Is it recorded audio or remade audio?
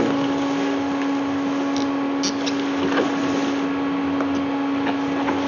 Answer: recorded